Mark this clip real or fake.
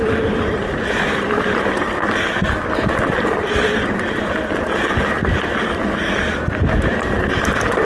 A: real